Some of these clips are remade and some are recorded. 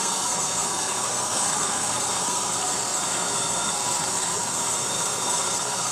remade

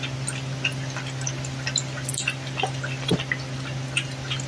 recorded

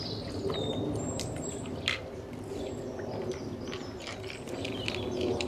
recorded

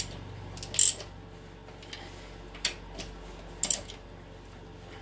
recorded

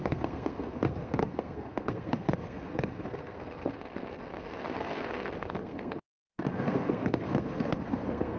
remade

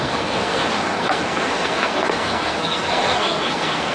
remade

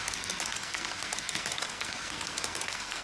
remade